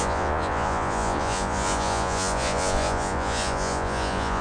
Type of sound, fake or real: fake